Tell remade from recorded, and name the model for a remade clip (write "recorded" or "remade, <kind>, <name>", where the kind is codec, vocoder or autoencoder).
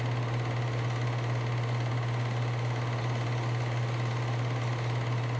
recorded